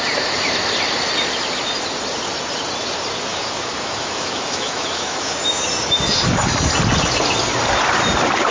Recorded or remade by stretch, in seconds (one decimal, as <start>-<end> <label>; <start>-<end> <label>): 0.0-3.3 recorded; 3.3-5.4 remade; 5.4-8.5 recorded